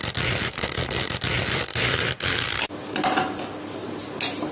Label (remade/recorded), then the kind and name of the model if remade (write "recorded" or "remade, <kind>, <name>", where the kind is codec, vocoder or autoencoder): recorded